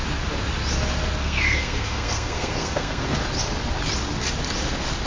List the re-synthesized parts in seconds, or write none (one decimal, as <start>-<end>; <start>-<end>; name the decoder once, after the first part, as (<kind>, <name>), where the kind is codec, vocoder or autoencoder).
1.2-3.2 (codec, SNAC)